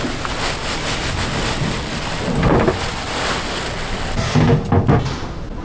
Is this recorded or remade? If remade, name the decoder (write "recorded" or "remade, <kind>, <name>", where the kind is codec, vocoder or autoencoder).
recorded